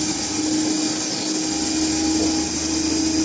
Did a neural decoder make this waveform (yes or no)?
no